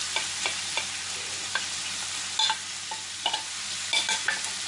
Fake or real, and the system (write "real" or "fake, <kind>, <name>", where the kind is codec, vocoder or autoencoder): real